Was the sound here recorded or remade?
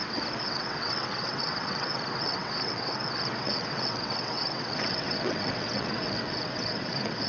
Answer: remade